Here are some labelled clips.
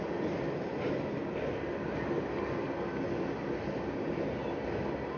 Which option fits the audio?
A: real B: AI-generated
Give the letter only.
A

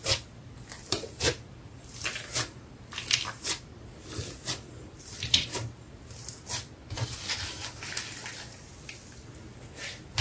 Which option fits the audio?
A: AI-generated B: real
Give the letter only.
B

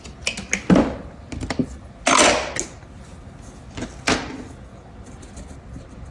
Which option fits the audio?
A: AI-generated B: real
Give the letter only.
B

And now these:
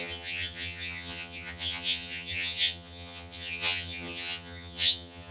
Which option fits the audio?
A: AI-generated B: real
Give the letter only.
A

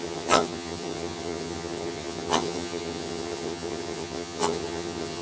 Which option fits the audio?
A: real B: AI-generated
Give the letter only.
B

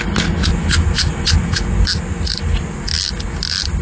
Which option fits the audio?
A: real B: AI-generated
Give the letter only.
A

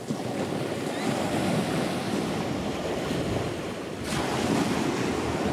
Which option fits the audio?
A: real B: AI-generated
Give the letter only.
A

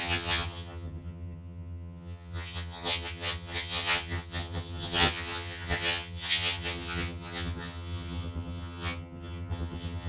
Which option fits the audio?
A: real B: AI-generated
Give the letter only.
B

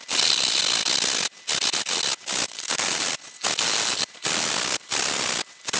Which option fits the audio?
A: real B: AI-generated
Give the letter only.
A